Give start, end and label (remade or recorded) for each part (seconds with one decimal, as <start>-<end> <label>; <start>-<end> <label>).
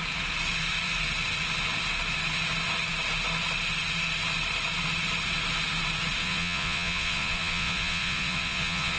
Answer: 0.0-6.2 recorded; 6.2-9.0 remade